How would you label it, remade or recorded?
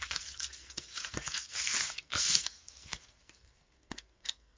remade